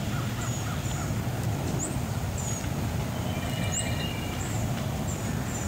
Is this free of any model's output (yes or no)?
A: yes